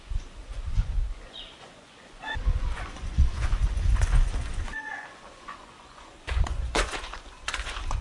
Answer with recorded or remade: remade